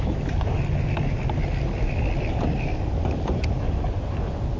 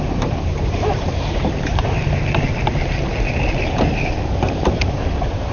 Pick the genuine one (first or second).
first